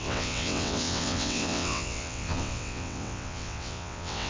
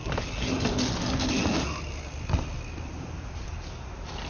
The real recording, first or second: second